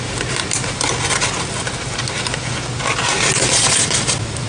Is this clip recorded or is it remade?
recorded